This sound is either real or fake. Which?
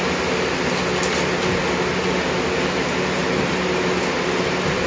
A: real